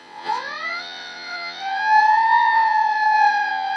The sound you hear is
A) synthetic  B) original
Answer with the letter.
A